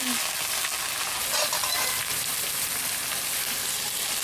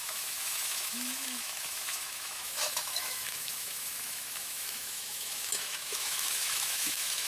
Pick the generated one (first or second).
second